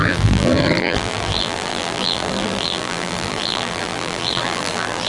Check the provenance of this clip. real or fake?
fake